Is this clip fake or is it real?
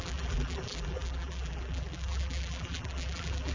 fake